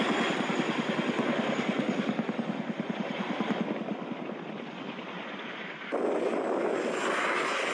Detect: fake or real real